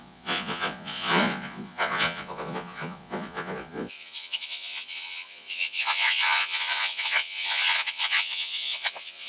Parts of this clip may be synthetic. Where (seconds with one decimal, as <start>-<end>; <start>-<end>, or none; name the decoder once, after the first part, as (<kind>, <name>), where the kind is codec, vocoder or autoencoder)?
0.0-9.3 (vocoder, Vocos)